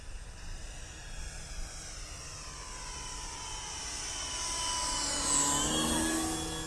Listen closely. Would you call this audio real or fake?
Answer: real